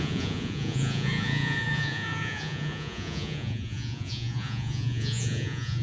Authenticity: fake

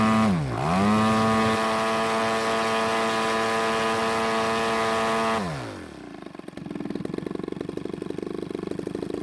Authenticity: real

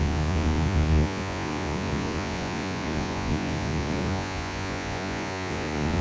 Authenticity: fake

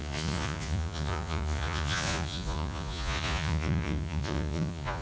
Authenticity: fake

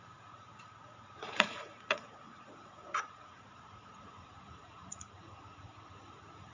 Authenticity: fake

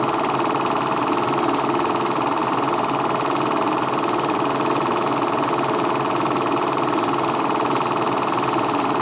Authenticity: real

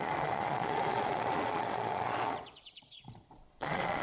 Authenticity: fake